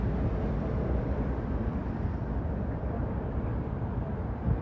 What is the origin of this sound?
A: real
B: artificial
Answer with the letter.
A